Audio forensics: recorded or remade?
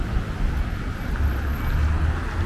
recorded